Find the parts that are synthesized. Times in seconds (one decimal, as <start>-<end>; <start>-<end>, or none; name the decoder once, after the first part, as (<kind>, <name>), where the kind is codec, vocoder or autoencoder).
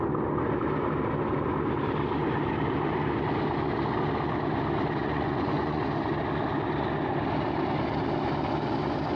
5.0-5.8 (vocoder, Vocos)